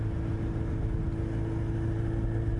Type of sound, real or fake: real